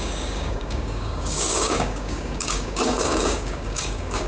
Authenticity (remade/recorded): remade